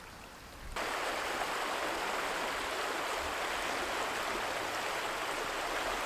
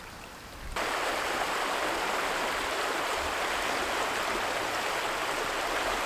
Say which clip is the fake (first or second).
second